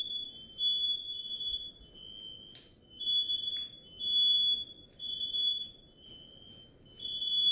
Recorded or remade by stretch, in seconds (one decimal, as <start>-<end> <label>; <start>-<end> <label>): 0.0-5.5 recorded; 5.5-6.1 remade; 6.1-7.5 recorded